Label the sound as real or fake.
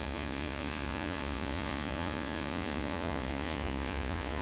fake